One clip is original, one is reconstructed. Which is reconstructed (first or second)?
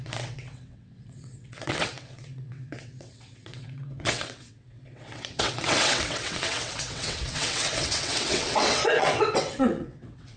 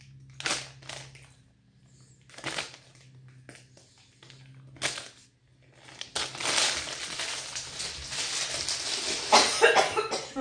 first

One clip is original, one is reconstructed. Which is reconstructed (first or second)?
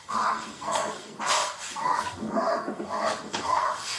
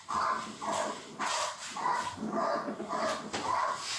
first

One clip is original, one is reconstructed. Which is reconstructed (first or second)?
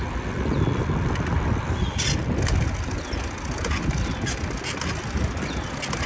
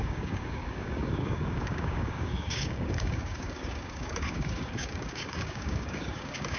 second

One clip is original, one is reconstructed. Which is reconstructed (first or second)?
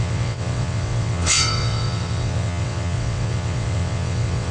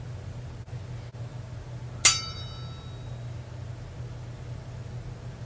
first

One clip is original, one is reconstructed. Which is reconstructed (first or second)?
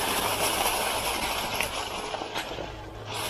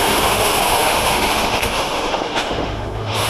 second